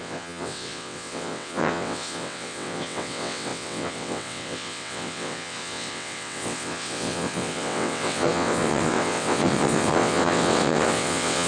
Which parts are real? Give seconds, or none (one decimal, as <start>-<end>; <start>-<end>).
none

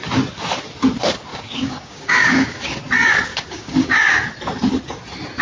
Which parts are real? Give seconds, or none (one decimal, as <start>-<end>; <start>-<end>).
0.0-1.3; 2.8-3.3; 4.3-5.4

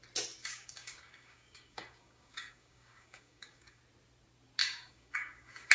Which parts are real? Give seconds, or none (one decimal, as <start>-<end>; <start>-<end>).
0.0-0.4; 3.8-4.6